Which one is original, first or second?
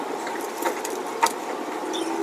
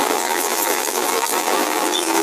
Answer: first